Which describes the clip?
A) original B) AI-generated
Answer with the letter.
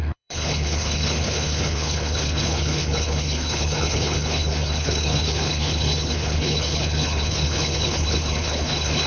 B